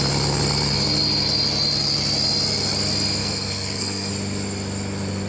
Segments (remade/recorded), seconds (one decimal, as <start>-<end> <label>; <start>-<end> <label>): 0.0-3.2 recorded; 3.2-4.1 remade; 4.1-5.3 recorded